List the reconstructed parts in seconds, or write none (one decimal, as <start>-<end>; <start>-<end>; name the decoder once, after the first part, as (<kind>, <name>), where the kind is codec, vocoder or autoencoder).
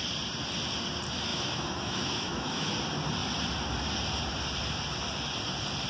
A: 1.3-2.7 (autoencoder, DAC-VAE)